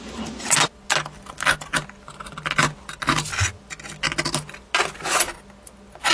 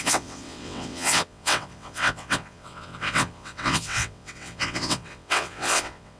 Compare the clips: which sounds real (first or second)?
first